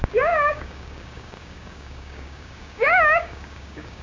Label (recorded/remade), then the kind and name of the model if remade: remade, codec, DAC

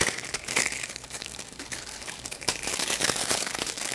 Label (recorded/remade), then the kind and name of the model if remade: remade, codec, DAC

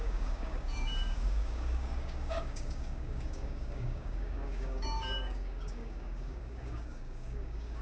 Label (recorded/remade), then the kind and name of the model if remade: remade, codec, DAC